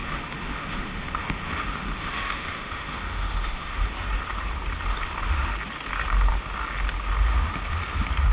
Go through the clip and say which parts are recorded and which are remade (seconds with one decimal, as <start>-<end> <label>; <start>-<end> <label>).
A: 0.0-3.8 remade; 3.8-8.3 recorded